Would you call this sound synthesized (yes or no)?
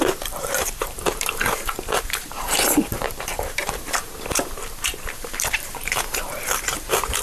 yes